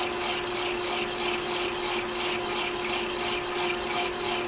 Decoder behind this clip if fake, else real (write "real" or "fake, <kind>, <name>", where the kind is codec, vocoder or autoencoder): real